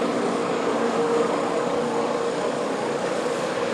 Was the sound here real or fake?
fake